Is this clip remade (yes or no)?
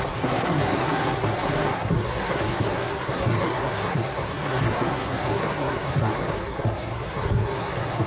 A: yes